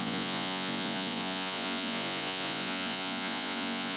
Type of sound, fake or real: fake